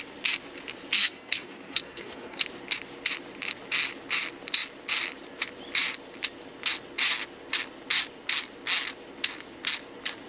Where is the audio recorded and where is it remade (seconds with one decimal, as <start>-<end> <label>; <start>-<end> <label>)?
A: 0.0-1.0 recorded; 1.0-2.4 remade; 2.4-10.3 recorded